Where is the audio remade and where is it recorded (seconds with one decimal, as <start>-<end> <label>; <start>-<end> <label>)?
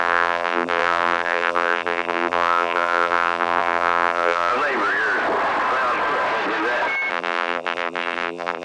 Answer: 0.0-4.5 remade; 4.5-7.1 recorded; 7.1-8.6 remade